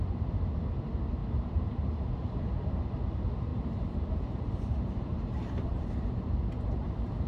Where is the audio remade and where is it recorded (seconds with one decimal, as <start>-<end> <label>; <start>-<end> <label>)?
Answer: 0.0-1.2 recorded; 1.2-2.2 remade; 2.2-3.5 recorded; 3.5-6.2 remade; 6.2-7.3 recorded

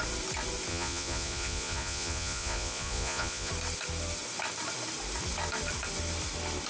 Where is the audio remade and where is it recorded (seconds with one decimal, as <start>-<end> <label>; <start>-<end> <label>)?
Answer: 0.0-0.7 recorded; 0.7-3.5 remade; 3.5-6.7 recorded

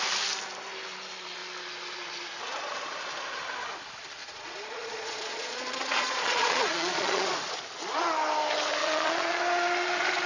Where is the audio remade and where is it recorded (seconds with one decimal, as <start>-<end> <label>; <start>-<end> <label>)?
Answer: 0.0-4.2 recorded; 4.2-7.3 remade; 7.3-8.8 recorded; 8.8-9.4 remade; 9.4-10.3 recorded

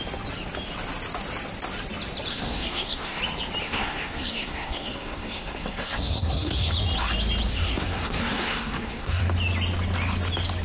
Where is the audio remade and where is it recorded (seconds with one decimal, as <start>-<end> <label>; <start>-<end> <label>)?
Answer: 0.0-2.3 recorded; 2.3-3.2 remade; 3.2-3.6 recorded; 3.6-6.7 remade; 6.7-7.5 recorded; 7.5-9.2 remade; 9.2-10.6 recorded

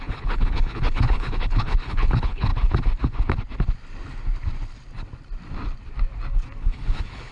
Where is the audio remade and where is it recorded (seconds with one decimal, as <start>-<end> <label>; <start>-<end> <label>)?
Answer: 0.0-2.5 remade; 2.5-6.6 recorded; 6.6-7.3 remade

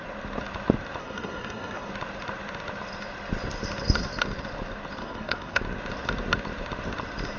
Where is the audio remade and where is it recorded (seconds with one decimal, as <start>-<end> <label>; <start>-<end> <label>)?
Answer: 0.0-1.0 recorded; 1.0-1.9 remade; 1.9-5.0 recorded; 5.0-5.6 remade; 5.6-7.4 recorded

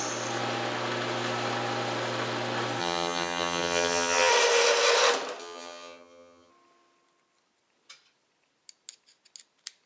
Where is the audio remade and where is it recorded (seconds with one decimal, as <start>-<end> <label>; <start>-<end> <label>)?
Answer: 0.0-2.8 recorded; 2.8-4.3 remade; 4.3-5.4 recorded; 5.4-6.5 remade; 6.5-9.9 recorded